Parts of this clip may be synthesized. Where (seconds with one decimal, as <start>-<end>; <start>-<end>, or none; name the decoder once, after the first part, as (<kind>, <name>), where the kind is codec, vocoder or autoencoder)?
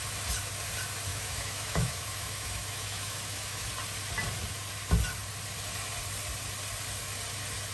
1.1-3.7 (autoencoder, DAC-VAE)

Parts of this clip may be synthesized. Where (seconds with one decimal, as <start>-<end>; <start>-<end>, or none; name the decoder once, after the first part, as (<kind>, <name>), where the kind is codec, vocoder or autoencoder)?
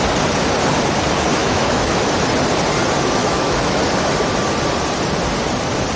1.4-2.1 (autoencoder, DAC-VAE); 3.2-3.8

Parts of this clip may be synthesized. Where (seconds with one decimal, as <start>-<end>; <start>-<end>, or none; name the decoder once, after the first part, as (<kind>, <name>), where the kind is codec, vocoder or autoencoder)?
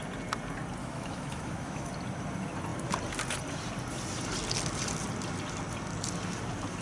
0.8-1.9 (autoencoder, DAC-VAE)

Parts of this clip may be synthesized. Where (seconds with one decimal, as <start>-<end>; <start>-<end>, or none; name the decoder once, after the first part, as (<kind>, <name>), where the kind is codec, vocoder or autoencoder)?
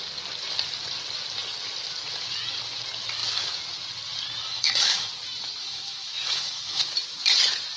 4.4-5.1 (autoencoder, DAC-VAE); 5.6-6.8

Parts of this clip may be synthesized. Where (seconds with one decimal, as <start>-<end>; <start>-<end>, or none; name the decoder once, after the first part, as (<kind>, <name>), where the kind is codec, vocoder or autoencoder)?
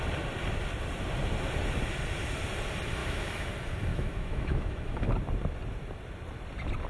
3.0-3.5 (autoencoder, DAC-VAE); 3.9-5.1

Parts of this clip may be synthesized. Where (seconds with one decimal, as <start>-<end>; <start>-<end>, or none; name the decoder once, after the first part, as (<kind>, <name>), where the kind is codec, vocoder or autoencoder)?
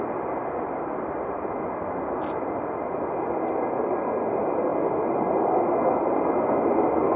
none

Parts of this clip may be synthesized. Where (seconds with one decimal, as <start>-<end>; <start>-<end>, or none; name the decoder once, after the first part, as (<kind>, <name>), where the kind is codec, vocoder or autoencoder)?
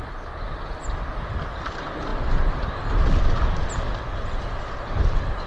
none